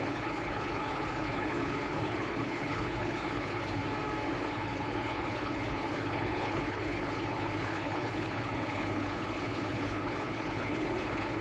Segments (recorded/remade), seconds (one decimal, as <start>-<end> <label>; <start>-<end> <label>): 0.0-3.8 remade; 3.8-4.4 recorded; 4.4-11.4 remade